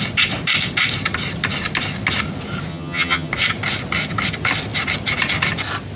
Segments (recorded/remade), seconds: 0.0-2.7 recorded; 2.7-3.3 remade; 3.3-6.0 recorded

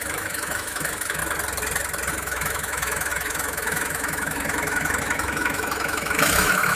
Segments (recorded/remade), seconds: 0.0-1.2 remade; 1.2-2.1 recorded; 2.1-6.8 remade

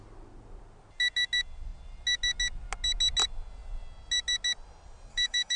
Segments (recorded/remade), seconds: 0.0-5.1 recorded; 5.1-5.6 remade

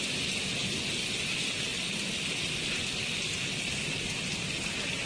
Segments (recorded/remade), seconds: 0.0-5.1 recorded

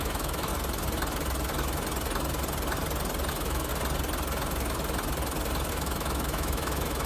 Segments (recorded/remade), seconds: 0.0-0.5 remade; 0.5-3.3 recorded; 3.3-3.7 remade; 3.7-5.7 recorded; 5.7-7.1 remade

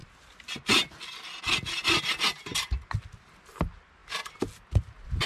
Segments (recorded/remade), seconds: 0.0-1.4 remade; 1.4-5.3 recorded